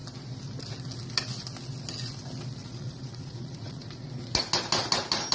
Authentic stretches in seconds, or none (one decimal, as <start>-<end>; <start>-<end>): 0.0-2.6; 4.1-5.3